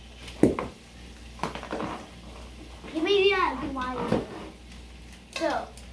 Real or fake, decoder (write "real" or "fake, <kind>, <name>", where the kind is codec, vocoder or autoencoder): real